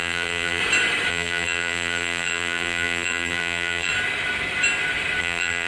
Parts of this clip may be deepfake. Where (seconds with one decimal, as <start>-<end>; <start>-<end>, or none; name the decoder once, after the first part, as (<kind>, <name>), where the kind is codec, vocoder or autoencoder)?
0.0-0.6 (vocoder, BigVGAN v2); 1.1-3.9; 5.2-5.7